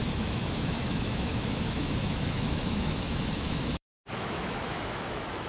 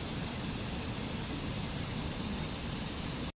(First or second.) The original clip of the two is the second